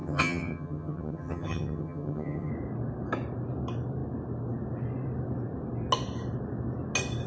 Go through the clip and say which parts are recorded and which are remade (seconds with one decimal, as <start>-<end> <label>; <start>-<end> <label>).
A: 0.0-2.5 remade; 2.5-7.3 recorded